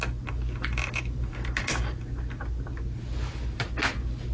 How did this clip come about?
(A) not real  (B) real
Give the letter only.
B